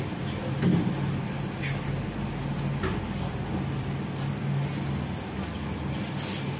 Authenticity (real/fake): real